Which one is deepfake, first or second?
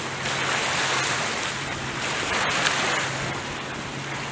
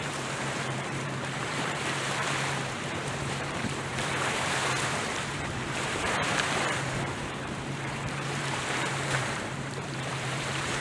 second